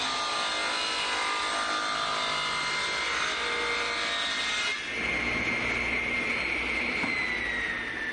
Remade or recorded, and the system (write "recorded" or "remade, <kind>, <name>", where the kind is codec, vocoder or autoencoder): recorded